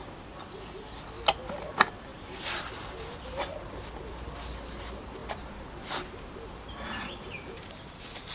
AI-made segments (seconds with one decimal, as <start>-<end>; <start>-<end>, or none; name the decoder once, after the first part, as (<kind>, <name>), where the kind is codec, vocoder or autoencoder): none